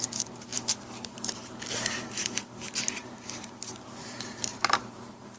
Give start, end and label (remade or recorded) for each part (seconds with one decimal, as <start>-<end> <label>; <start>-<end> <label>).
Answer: 0.0-5.4 remade